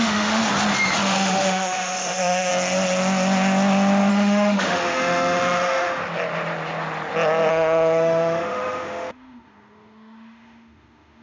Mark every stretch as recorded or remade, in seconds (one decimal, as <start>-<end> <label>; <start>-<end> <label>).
0.0-0.4 remade; 0.4-1.0 recorded; 1.0-2.5 remade; 2.5-4.1 recorded; 4.1-6.0 remade; 6.0-7.5 recorded; 7.5-11.2 remade